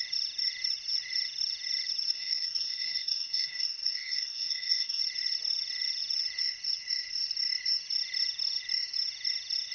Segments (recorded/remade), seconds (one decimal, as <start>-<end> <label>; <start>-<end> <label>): 0.0-2.1 recorded; 2.1-5.0 remade; 5.0-9.7 recorded